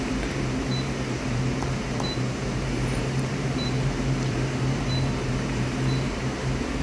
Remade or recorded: remade